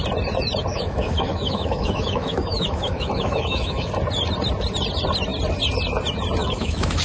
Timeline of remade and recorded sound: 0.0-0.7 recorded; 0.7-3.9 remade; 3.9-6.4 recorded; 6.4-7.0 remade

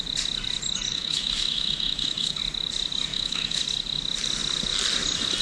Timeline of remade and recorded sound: 0.0-0.9 recorded; 0.9-2.4 remade; 2.4-3.1 recorded; 3.1-3.6 remade; 3.6-5.4 recorded